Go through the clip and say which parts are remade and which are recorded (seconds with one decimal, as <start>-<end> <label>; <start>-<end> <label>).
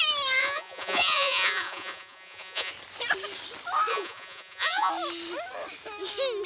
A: 0.0-0.4 recorded; 0.4-2.7 remade; 2.7-3.9 recorded; 3.9-4.9 remade; 4.9-6.5 recorded